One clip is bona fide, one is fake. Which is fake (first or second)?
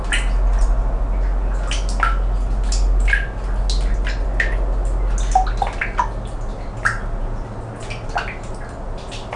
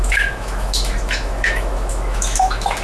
second